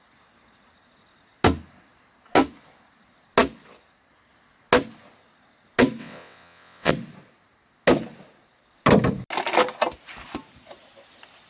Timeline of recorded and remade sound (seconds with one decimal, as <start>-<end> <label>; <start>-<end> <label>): 0.0-6.0 recorded; 6.0-6.9 remade; 6.9-11.5 recorded

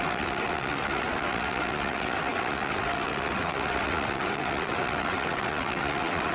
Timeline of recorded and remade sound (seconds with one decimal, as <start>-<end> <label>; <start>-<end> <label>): 0.0-6.3 remade